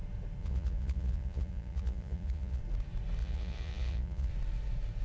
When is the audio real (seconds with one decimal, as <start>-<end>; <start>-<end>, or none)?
0.0-0.4; 2.6-3.2; 4.3-5.0